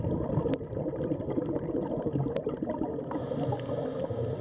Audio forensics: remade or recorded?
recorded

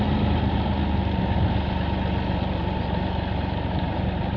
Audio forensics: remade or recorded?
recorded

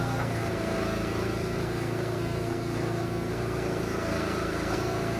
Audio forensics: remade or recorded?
remade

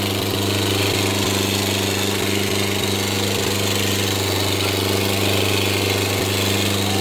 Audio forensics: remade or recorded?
recorded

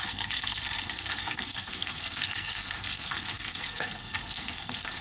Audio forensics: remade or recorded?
remade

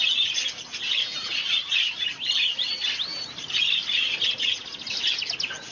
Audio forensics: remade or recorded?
recorded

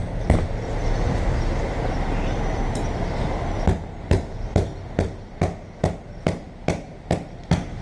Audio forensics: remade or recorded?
recorded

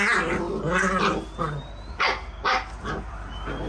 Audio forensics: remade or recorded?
recorded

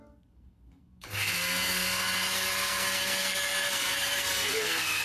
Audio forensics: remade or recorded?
remade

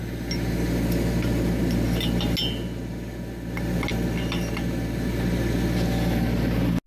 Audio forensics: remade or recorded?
recorded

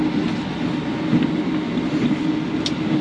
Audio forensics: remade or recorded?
recorded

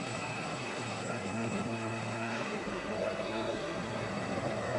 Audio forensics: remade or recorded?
remade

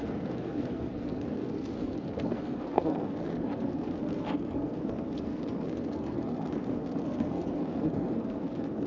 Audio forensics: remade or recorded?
remade